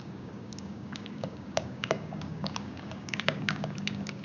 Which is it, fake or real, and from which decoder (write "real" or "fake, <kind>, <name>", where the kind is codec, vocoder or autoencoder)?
fake, codec, DAC